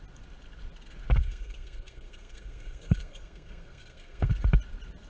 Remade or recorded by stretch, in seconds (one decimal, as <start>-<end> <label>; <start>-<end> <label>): 0.0-1.2 recorded; 1.2-4.3 remade; 4.3-5.1 recorded